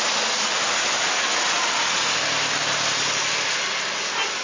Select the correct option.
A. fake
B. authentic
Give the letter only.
B